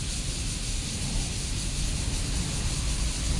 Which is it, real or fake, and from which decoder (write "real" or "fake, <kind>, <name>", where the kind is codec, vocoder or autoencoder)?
real